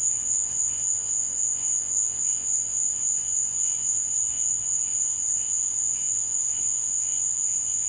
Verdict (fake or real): fake